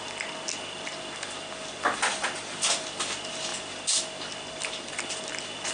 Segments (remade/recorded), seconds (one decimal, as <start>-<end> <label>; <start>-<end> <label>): 0.0-5.7 recorded